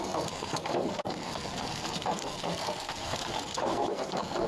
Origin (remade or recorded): remade